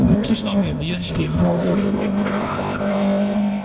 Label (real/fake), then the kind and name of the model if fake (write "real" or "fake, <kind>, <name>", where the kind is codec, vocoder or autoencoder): fake, codec, ZipCodec